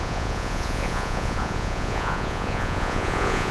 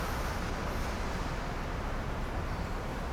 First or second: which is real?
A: second